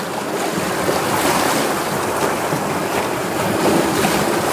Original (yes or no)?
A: yes